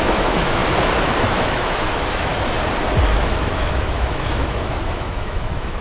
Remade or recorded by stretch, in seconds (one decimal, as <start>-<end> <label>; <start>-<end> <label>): 0.0-0.6 remade; 0.6-1.3 recorded; 1.3-2.3 remade; 2.3-3.2 recorded; 3.2-5.8 remade